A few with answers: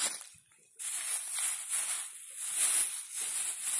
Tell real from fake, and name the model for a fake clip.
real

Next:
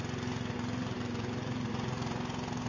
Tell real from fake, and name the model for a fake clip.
real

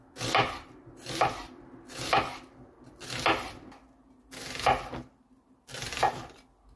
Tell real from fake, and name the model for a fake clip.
real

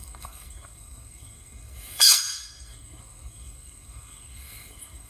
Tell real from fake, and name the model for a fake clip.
fake, codec, SNAC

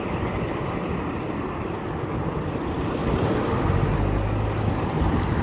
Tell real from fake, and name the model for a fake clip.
real